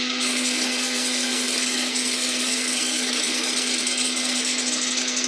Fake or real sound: fake